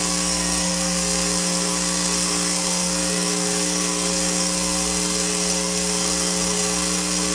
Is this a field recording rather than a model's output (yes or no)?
no